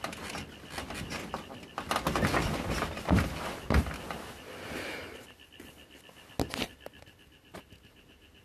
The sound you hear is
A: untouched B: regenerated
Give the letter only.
A